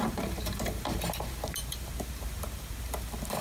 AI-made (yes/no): yes